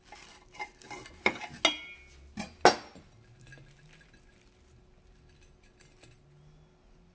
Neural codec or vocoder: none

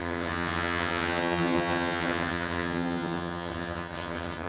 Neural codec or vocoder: vocoder, HiFi-GAN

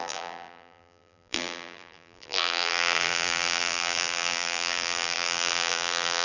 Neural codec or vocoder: vocoder, BigVGAN v2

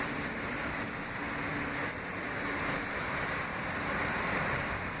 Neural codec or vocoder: none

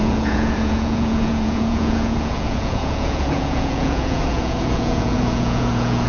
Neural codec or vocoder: vocoder, Vocos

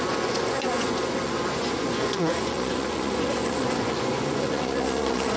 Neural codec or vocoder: vocoder, Vocos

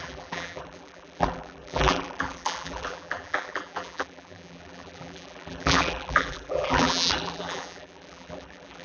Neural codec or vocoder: vocoder, BigVGAN v2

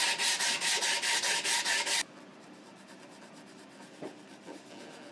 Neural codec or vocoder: none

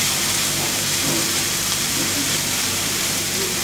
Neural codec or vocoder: vocoder, BigVGAN v2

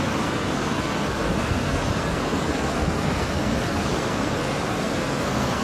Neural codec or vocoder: codec, SNAC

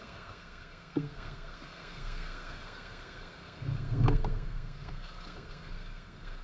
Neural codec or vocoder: codec, SNAC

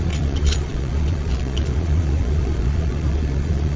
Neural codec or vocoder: vocoder, Vocos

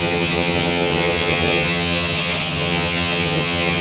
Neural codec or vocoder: vocoder, HiFi-GAN